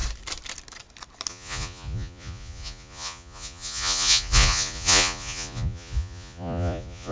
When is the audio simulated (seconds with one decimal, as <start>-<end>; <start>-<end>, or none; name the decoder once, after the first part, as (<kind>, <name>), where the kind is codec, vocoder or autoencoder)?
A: 1.3-7.1 (vocoder, Vocos)